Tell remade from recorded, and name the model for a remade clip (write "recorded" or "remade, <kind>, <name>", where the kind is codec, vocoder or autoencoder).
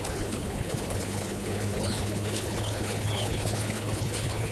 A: remade, codec, HILCodec